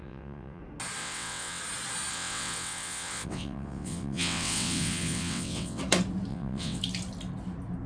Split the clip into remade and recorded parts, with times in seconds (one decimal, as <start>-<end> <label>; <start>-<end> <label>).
0.0-0.6 remade; 0.6-1.0 recorded; 1.0-1.6 remade; 1.6-2.1 recorded; 2.1-5.8 remade; 5.8-6.3 recorded; 6.3-6.8 remade; 6.8-7.9 recorded